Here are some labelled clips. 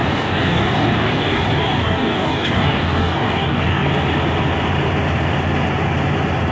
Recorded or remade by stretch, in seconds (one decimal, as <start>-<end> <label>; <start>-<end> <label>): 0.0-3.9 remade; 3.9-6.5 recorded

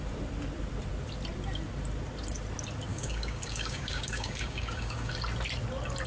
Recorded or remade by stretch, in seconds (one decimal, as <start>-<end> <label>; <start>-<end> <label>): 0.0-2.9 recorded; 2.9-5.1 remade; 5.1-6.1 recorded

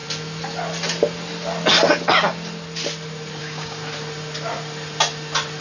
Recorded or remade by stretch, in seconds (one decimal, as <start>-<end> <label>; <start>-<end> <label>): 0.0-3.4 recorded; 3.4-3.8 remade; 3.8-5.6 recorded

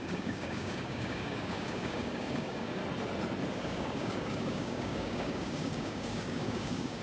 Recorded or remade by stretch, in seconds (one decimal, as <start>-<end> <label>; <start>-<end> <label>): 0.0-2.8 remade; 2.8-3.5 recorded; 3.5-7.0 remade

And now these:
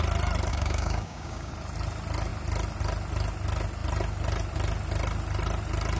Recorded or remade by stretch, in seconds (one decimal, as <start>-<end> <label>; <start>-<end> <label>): 0.0-0.5 recorded; 0.5-1.5 remade; 1.5-6.0 recorded